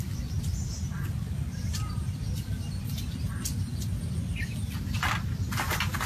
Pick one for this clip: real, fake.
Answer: real